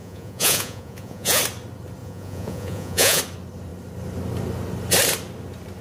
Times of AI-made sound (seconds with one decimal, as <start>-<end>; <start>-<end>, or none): 0.0-1.4; 2.0-3.2